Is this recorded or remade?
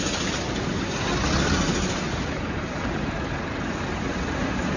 recorded